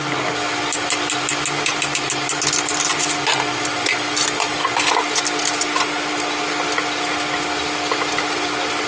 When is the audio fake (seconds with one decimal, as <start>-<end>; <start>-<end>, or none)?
none